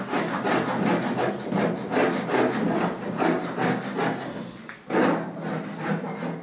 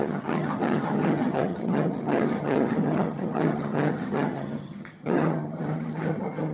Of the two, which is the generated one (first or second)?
second